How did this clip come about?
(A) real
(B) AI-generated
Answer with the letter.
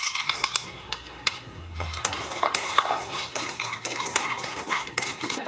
B